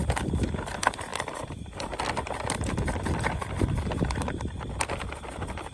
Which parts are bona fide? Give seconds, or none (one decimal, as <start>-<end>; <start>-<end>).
0.0-5.7